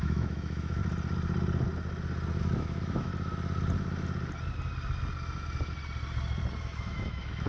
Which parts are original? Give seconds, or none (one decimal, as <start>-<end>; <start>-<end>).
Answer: 0.8-2.4; 3.1-6.6